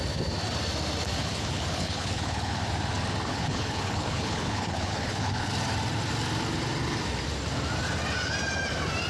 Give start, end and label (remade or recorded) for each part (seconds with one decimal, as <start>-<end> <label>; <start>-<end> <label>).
0.0-1.2 recorded; 1.2-2.6 remade; 2.6-3.3 recorded; 3.3-5.5 remade; 5.5-9.1 recorded

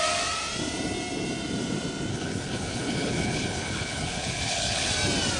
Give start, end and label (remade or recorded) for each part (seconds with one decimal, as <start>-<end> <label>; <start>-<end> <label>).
0.0-2.1 recorded; 2.1-4.9 remade; 4.9-5.4 recorded

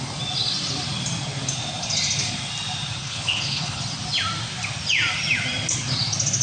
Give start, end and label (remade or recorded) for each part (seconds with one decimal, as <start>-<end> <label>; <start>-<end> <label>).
0.0-3.0 recorded; 3.0-3.8 remade; 3.8-6.4 recorded

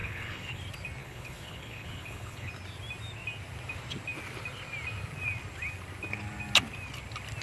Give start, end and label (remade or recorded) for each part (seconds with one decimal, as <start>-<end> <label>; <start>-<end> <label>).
0.0-0.6 remade; 0.6-1.0 recorded; 1.0-2.5 remade; 2.5-7.4 recorded

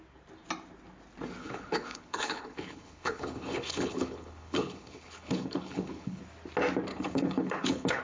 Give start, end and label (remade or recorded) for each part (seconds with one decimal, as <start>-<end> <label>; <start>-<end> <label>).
0.0-1.4 recorded; 1.4-6.2 remade; 6.2-6.9 recorded; 6.9-8.0 remade

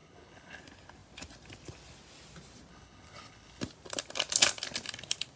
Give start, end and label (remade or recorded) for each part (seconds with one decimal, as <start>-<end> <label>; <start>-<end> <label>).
0.0-0.6 remade; 0.6-2.7 recorded; 2.7-3.6 remade; 3.6-5.4 recorded